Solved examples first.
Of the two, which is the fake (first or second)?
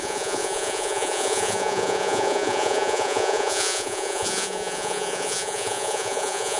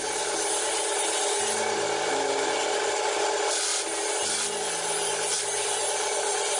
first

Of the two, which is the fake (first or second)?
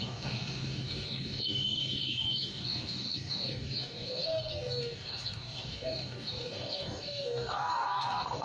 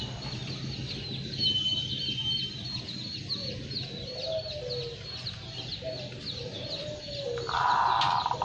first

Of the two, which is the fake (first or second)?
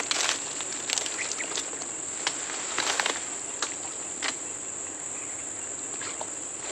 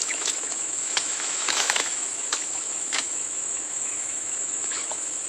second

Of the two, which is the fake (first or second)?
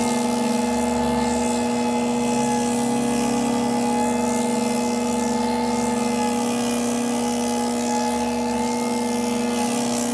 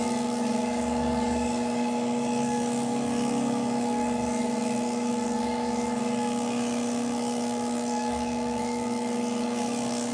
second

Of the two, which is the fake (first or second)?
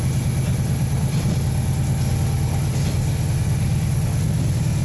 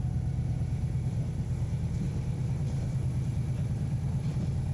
second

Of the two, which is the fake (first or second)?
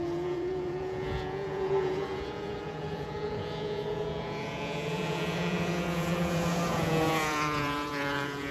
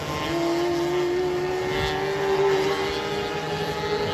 first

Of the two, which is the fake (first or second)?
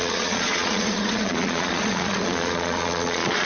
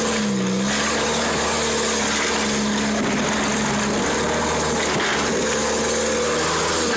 first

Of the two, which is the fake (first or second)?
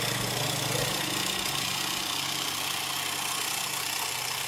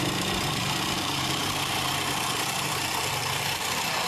second